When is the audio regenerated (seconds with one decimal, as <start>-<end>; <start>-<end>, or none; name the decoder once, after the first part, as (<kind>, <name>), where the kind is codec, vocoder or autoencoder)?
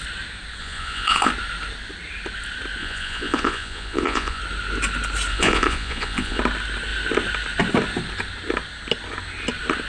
0.6-1.3 (vocoder, Vocos); 2.8-4.4; 5.3-6.4